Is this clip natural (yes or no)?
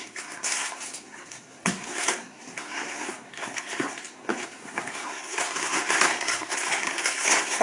no